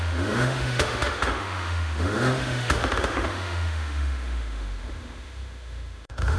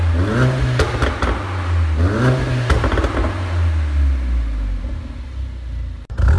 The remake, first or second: first